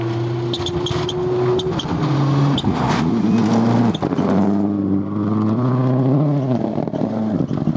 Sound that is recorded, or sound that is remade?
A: recorded